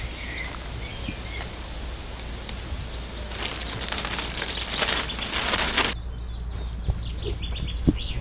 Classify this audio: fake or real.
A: real